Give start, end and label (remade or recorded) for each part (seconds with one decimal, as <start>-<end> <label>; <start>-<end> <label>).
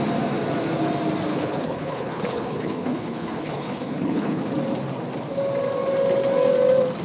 0.0-1.3 recorded; 1.3-4.4 remade; 4.4-7.0 recorded